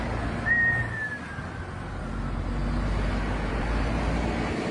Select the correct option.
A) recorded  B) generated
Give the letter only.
A